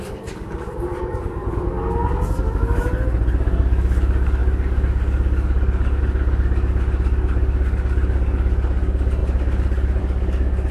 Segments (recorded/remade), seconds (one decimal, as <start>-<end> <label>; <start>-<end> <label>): 0.0-2.8 remade; 2.8-3.4 recorded; 3.4-10.7 remade